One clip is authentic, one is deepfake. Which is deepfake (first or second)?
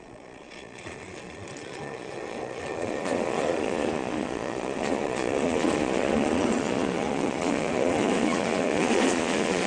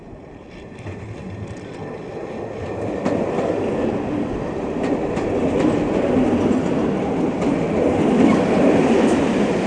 first